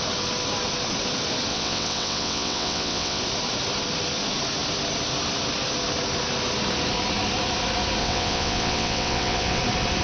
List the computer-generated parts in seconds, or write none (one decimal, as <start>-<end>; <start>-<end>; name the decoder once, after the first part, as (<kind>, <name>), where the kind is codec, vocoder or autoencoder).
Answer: 1.5-3.2 (vocoder, WaveNeXt); 8.0-9.6